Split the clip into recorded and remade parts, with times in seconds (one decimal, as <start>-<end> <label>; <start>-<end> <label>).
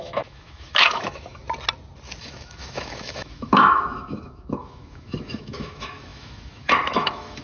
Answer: 0.0-1.4 remade; 1.4-2.2 recorded; 2.2-7.4 remade